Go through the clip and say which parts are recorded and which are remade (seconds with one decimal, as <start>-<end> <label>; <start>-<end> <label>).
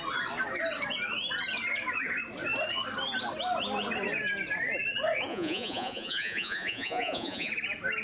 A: 0.0-5.3 recorded; 5.3-7.5 remade; 7.5-8.0 recorded